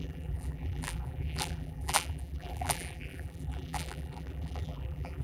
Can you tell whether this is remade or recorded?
remade